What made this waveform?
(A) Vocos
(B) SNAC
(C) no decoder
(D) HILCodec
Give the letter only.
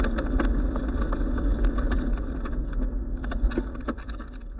C